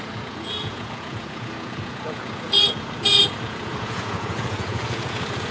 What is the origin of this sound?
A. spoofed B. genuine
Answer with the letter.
A